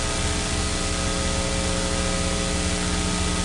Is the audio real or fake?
real